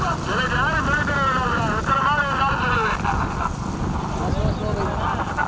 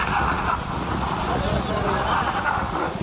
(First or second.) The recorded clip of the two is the first